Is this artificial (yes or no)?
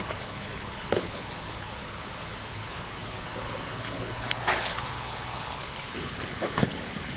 yes